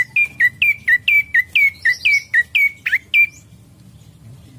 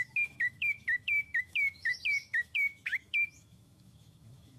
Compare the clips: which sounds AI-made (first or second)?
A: second